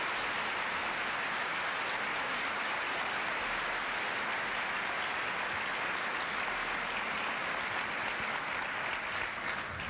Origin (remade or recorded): recorded